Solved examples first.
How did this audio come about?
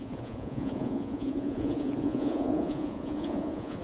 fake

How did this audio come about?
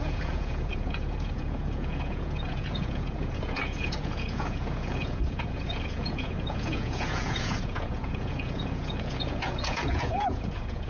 fake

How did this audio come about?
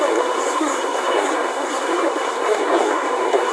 fake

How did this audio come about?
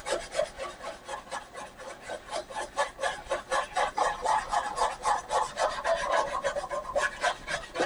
real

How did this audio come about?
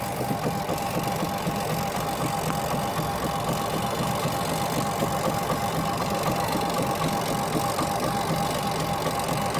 real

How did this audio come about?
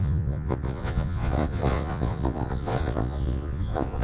fake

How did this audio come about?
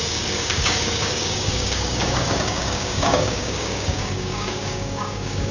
fake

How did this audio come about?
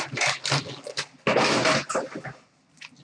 real